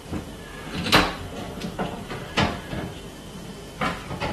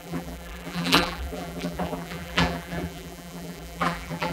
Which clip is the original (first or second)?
first